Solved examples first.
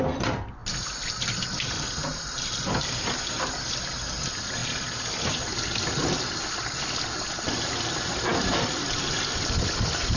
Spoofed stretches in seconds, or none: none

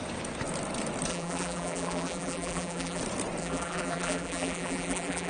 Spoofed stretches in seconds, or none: 1.1-3.0; 3.4-5.3

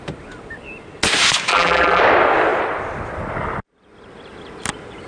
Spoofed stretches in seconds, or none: 1.5-2.0

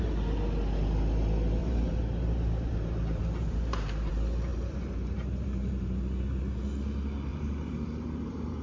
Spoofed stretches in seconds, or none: 1.6-4.1; 4.5-6.6; 7.3-8.6

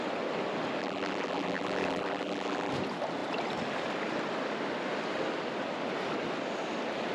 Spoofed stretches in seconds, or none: 0.8-2.7

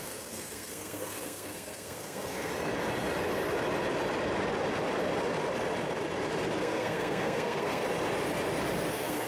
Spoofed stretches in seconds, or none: 0.0-2.5; 6.6-7.8; 8.9-9.3

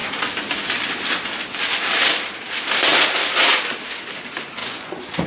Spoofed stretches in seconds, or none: 4.6-5.3